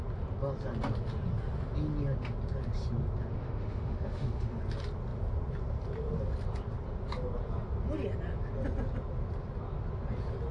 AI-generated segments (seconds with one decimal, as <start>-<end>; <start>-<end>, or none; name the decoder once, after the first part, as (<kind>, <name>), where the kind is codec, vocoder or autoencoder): 3.3-4.6 (autoencoder, DAC-VAE)